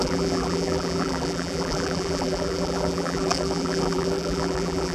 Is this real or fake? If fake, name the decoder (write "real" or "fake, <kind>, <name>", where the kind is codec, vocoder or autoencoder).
fake, vocoder, BigVGAN v2